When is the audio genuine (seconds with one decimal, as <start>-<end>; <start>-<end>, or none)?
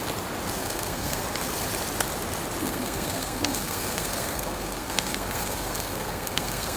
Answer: 0.0-0.6; 1.2-2.6